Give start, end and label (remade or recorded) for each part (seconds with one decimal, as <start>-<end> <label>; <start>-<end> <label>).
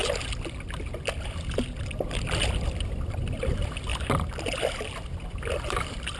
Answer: 0.0-2.1 recorded; 2.1-3.9 remade; 3.9-5.4 recorded; 5.4-6.2 remade